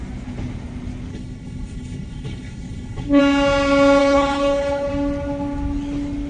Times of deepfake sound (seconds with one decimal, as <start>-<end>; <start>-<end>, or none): 1.1-3.2; 4.0-4.9